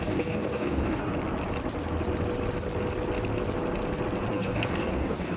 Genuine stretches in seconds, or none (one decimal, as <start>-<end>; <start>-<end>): 1.1-4.3